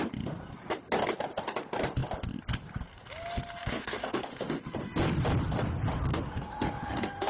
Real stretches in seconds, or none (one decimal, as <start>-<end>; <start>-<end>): 0.0-3.6; 4.6-6.1